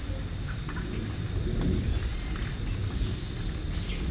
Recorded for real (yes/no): yes